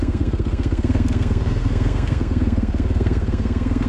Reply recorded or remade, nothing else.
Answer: remade